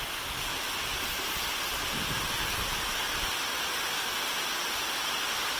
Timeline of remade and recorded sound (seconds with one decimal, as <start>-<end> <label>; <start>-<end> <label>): 0.0-0.5 recorded; 0.5-3.9 remade; 3.9-5.6 recorded